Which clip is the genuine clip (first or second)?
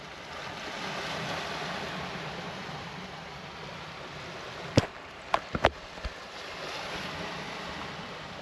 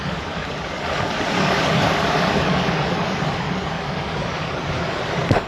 first